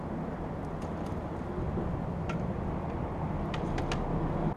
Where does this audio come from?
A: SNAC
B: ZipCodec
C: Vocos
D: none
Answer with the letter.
D